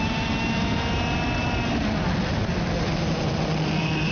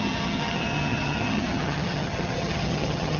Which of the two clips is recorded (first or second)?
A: first